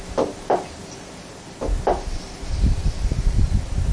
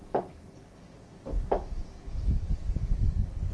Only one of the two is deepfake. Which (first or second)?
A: second